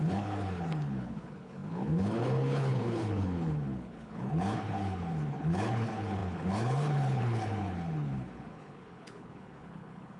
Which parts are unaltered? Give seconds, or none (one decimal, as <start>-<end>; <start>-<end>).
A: none